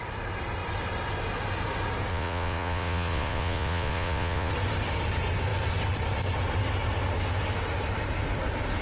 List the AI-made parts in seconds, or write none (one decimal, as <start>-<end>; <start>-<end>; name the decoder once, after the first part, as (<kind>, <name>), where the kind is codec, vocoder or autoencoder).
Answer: 2.1-4.5 (vocoder, Vocos)